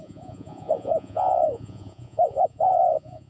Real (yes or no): no